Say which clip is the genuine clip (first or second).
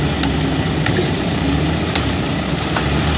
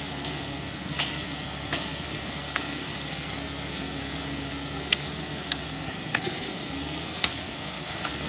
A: first